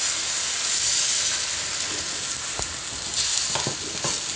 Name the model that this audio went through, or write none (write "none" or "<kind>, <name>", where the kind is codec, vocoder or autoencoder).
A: none